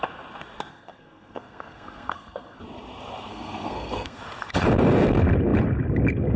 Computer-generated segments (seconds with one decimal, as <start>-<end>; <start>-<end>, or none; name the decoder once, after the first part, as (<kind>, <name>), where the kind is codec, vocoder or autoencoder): 0.7-2.6 (codec, SNAC); 3.3-4.2